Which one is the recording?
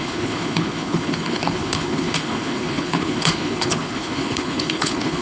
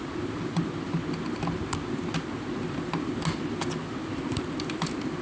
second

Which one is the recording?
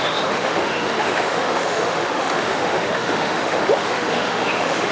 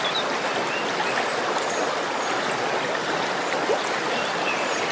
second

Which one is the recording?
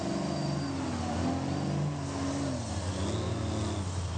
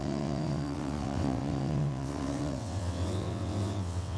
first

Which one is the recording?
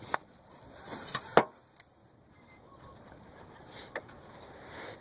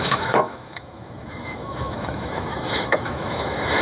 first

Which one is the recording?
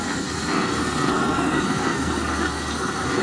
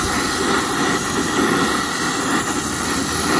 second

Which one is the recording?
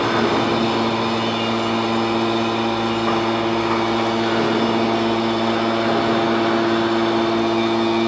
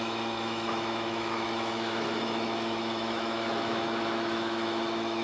first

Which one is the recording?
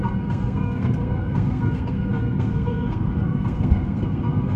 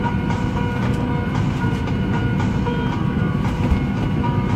second